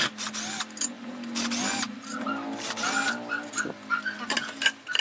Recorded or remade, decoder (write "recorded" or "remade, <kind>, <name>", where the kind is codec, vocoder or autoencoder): recorded